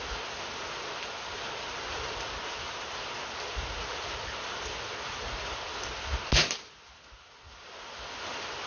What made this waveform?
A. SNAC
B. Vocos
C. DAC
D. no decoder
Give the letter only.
D